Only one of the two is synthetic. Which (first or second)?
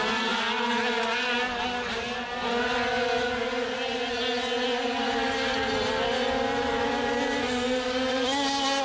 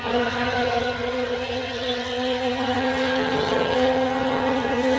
second